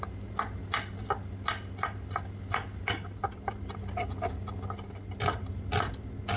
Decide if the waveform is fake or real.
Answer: real